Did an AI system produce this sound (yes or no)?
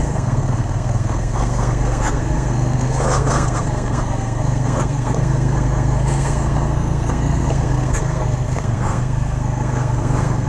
yes